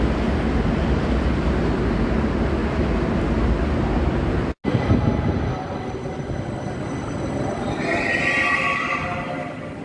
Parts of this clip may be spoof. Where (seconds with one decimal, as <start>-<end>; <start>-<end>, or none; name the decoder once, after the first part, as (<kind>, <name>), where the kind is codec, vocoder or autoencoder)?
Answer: none